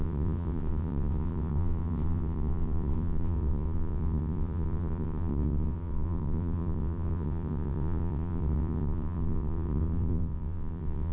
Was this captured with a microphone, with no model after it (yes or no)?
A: no